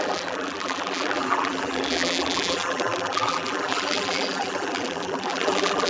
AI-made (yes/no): yes